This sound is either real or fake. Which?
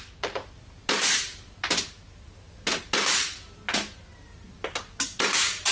real